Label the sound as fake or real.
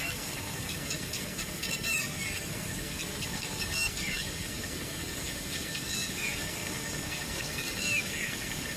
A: fake